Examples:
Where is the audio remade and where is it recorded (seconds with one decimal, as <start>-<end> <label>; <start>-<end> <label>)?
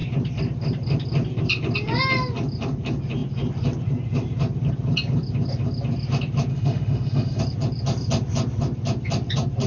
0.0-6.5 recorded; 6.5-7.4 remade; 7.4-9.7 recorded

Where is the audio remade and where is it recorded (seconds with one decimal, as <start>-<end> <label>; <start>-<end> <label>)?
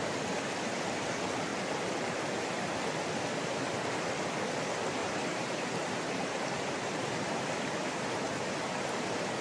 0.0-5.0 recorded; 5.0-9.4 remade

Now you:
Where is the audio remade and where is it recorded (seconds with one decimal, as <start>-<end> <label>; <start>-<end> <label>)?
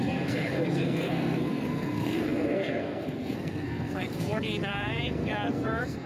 0.0-6.1 remade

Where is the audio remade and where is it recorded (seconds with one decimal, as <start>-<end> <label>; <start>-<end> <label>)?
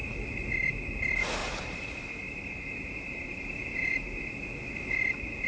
0.0-1.4 recorded; 1.4-4.2 remade; 4.2-5.5 recorded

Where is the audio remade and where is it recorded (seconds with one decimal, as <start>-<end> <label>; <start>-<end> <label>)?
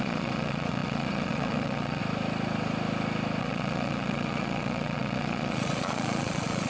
0.0-2.0 remade; 2.0-3.4 recorded; 3.4-6.7 remade